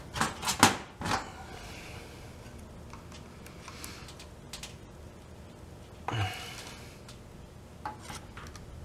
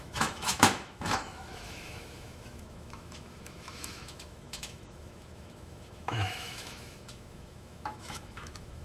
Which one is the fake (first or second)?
second